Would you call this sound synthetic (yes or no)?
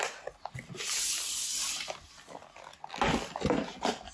no